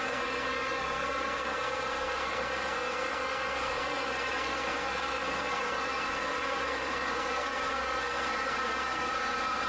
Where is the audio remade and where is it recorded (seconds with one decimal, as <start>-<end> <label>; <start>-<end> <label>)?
0.0-9.7 remade

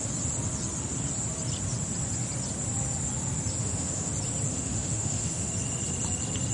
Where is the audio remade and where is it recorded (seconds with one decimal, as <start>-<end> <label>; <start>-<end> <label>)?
0.0-3.6 recorded; 3.6-4.1 remade; 4.1-4.5 recorded; 4.5-5.5 remade; 5.5-6.5 recorded

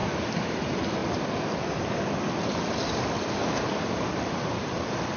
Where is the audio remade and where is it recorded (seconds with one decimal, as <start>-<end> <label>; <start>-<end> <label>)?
0.0-5.2 recorded

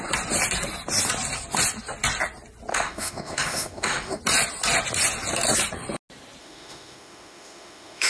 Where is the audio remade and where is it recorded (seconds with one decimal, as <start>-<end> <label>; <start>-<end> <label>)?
0.0-2.7 recorded; 2.7-4.2 remade; 4.2-6.4 recorded; 6.4-8.1 remade

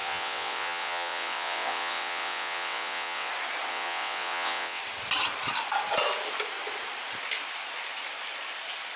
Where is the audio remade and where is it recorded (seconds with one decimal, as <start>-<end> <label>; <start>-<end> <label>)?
0.0-3.3 remade; 3.3-3.7 recorded; 3.7-4.8 remade; 4.8-9.0 recorded

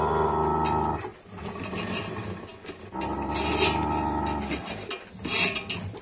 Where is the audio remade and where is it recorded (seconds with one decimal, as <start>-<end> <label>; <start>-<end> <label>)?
0.0-6.0 recorded

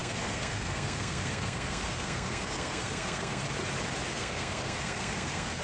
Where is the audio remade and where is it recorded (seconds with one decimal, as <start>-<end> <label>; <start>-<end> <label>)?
0.0-3.4 remade; 3.4-4.1 recorded; 4.1-5.6 remade

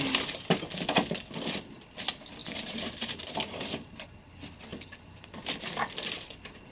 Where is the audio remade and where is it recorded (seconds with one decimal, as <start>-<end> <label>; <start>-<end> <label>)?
0.0-2.4 recorded; 2.4-3.9 remade; 3.9-4.7 recorded; 4.7-5.5 remade; 5.5-6.7 recorded